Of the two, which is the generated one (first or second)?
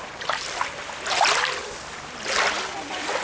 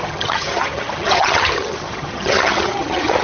second